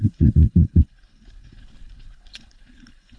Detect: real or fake fake